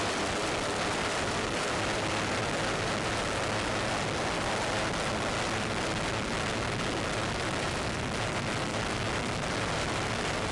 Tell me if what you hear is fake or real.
real